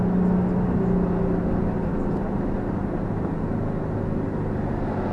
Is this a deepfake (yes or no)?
no